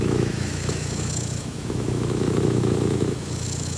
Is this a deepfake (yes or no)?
yes